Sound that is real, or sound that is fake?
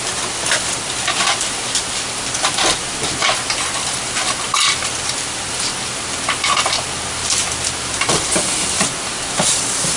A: fake